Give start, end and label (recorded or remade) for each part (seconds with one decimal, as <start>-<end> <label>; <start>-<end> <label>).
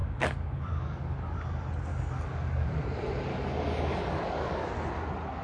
0.0-1.4 remade; 1.4-1.9 recorded; 1.9-2.7 remade; 2.7-3.3 recorded; 3.3-4.7 remade; 4.7-5.4 recorded